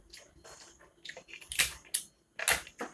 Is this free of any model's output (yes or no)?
yes